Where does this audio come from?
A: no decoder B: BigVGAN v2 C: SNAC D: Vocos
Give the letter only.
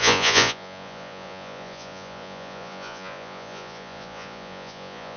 D